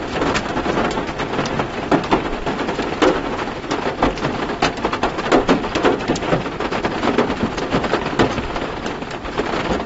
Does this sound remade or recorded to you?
recorded